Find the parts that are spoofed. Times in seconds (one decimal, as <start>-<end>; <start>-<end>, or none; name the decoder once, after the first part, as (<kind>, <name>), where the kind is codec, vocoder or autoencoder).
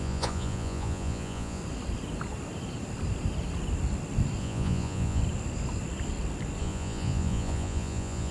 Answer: 0.0-1.6 (vocoder, Vocos); 4.4-5.2; 6.6-8.3